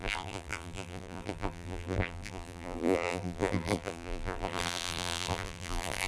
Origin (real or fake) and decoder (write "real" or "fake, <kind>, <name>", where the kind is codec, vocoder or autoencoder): fake, vocoder, BigVGAN v2